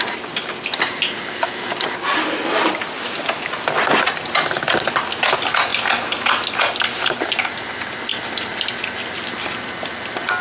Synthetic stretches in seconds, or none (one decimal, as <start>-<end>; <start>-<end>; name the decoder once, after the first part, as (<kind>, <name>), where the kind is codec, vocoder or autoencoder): none